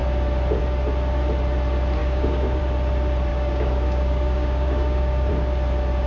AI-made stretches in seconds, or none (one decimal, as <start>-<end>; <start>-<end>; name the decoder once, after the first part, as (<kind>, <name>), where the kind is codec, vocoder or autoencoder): 2.0-2.6 (codec, DAC); 3.3-5.3